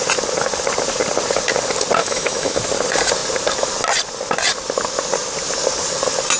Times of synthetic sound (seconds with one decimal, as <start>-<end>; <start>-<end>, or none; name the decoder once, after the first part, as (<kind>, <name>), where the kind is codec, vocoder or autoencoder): 2.0-2.6 (autoencoder, DAC-VAE)